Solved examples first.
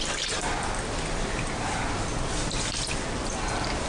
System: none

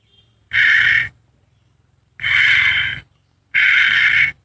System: none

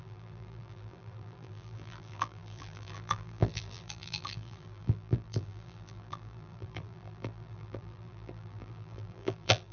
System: vocoder, BigVGAN v2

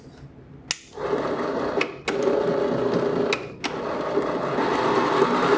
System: none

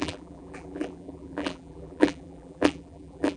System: vocoder, BigVGAN v2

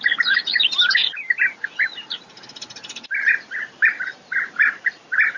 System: none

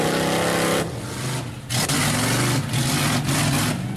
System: none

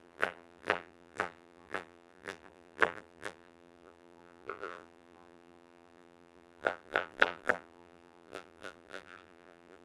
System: vocoder, BigVGAN v2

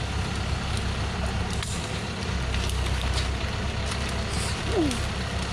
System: none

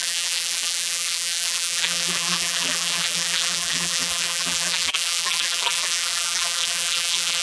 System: vocoder, BigVGAN v2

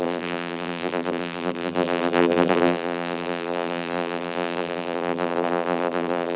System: vocoder, BigVGAN v2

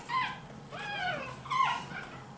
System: none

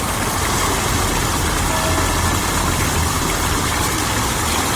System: none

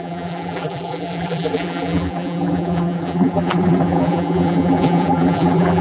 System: vocoder, BigVGAN v2